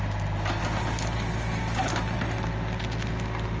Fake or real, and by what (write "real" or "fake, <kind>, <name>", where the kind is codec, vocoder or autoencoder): real